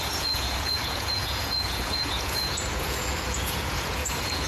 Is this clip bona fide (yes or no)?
no